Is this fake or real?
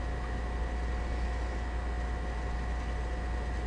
real